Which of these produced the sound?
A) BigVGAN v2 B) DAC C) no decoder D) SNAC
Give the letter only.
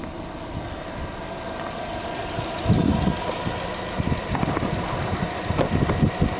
C